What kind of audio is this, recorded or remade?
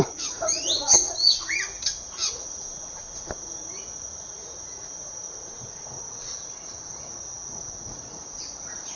remade